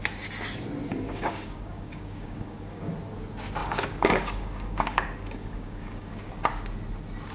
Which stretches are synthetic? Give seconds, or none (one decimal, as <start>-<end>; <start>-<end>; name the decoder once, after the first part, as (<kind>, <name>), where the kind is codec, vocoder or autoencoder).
0.9-2.9 (codec, DAC); 3.6-6.3